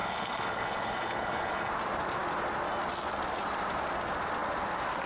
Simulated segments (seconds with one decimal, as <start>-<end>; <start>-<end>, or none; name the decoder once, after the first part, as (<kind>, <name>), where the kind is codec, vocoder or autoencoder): 0.0-1.7 (codec, HILCodec)